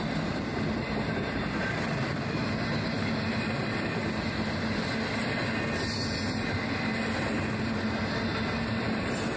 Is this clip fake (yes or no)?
no